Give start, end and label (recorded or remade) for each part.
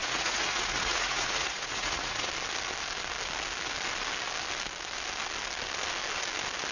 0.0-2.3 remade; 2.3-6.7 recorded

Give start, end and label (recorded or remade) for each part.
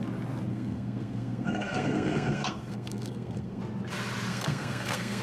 0.0-0.5 recorded; 0.5-3.6 remade; 3.6-4.3 recorded; 4.3-5.2 remade